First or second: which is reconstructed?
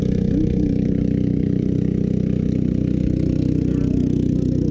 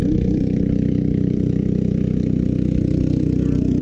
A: second